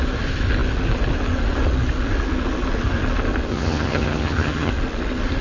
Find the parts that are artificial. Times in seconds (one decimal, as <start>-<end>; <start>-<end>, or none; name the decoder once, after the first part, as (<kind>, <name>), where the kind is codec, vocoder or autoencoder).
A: 3.5-4.7 (vocoder, HiFi-GAN)